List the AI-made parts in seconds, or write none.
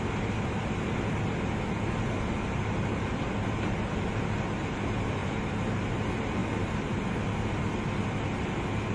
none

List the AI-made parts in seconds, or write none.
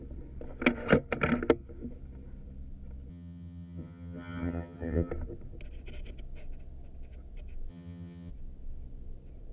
3.1-5.1 (vocoder, HiFi-GAN); 7.7-8.3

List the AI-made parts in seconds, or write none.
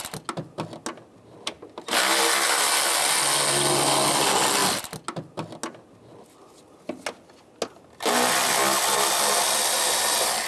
none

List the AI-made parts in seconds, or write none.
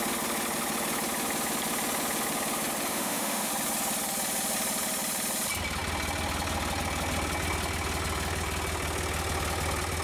2.9-3.5 (autoencoder, DAC-VAE)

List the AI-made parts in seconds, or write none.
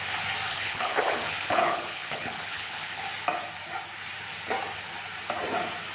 0.5-3.0 (codec, HILCodec)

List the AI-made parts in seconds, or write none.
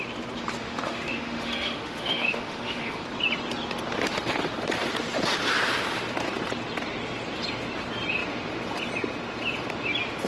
0.6-3.0 (autoencoder, DAC-VAE)